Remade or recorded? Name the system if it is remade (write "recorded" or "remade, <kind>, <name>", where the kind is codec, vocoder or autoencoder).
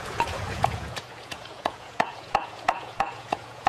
remade, vocoder, Vocos